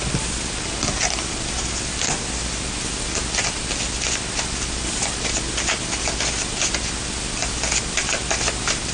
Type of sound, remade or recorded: recorded